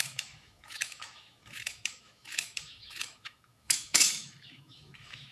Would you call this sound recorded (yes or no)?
no